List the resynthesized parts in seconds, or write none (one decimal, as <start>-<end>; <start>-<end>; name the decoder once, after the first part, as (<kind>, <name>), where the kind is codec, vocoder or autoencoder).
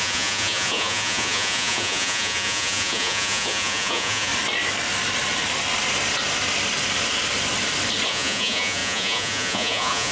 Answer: 0.0-4.3 (vocoder, Vocos); 8.1-10.1